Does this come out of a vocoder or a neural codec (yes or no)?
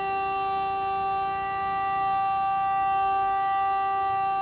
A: no